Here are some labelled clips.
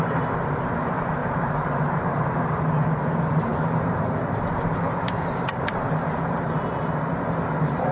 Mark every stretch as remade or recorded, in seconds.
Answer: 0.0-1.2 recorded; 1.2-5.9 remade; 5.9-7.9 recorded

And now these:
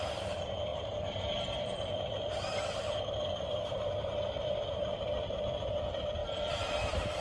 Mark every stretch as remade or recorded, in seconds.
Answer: 0.0-0.7 recorded; 0.7-5.0 remade; 5.0-7.2 recorded

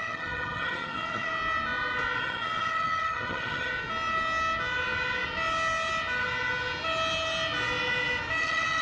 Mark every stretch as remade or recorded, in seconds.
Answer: 0.0-1.3 remade; 1.3-2.2 recorded; 2.2-3.7 remade; 3.7-8.4 recorded; 8.4-8.8 remade

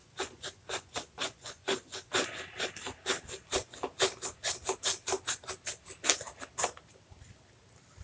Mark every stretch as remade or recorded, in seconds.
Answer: 0.0-2.1 remade; 2.1-8.0 recorded

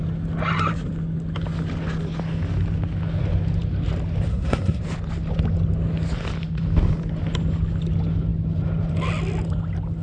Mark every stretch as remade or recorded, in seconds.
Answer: 0.0-4.3 recorded; 4.3-4.8 remade; 4.8-10.0 recorded

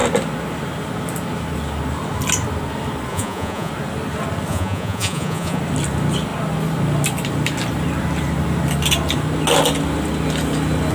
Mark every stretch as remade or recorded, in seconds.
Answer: 0.0-3.1 recorded; 3.1-3.7 remade; 3.7-4.5 recorded; 4.5-5.6 remade; 5.6-10.9 recorded

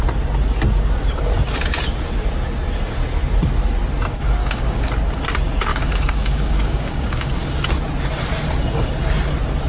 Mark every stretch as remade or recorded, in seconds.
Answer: 0.0-4.4 recorded; 4.4-4.9 remade; 4.9-5.7 recorded; 5.7-7.3 remade; 7.3-9.7 recorded